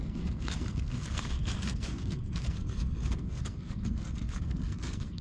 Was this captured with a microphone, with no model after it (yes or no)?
no